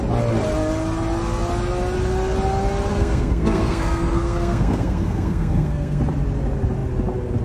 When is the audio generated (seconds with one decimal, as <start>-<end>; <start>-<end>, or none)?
2.9-6.0